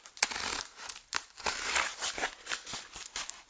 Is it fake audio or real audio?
real